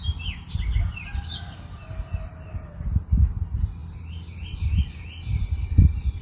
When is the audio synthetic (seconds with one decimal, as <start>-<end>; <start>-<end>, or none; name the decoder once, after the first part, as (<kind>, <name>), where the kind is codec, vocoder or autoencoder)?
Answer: none